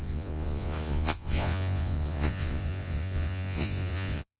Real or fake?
fake